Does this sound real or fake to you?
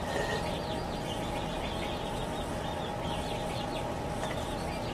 real